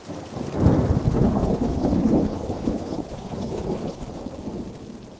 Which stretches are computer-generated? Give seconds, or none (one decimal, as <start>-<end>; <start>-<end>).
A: 1.1-4.2